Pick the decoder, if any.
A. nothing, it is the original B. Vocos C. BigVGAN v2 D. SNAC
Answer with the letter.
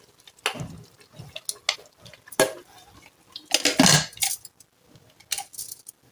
A